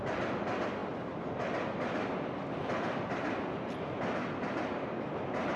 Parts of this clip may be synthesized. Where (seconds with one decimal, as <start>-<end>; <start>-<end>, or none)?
none